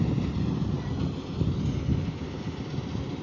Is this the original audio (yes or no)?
yes